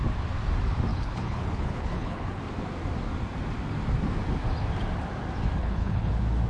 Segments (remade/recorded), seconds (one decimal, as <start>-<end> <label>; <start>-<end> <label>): 0.0-0.9 recorded; 0.9-2.4 remade; 2.4-5.6 recorded; 5.6-6.1 remade; 6.1-6.5 recorded